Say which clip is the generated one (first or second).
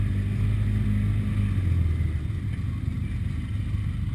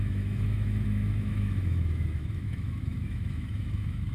second